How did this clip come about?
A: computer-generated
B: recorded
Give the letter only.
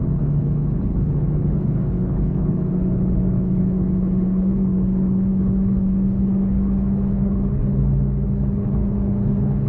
A